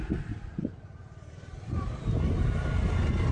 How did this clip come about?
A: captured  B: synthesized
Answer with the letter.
A